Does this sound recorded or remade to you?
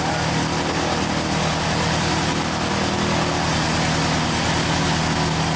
recorded